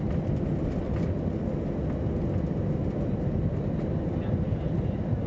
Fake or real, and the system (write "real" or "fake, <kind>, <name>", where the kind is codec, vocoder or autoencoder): real